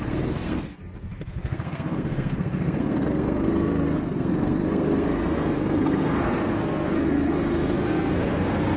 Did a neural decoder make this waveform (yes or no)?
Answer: yes